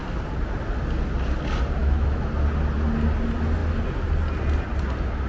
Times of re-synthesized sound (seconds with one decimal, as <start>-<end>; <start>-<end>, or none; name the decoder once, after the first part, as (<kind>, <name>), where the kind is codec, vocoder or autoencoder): 1.8-2.3 (autoencoder, DAC-VAE)